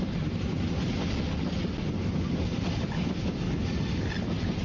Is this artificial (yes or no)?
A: no